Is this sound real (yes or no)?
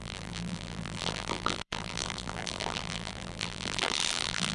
no